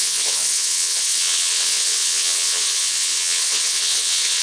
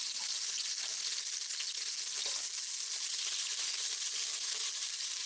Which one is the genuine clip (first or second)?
second